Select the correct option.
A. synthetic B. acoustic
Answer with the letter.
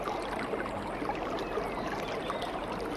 B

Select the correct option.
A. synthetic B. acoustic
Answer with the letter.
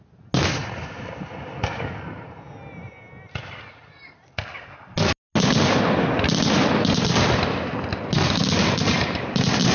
B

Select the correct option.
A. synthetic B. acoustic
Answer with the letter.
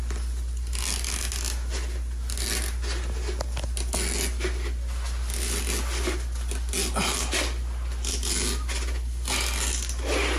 B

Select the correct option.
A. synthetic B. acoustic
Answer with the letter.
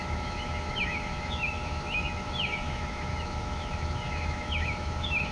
A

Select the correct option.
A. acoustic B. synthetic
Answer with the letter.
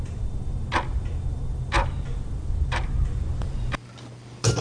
A